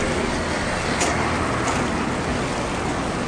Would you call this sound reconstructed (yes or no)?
no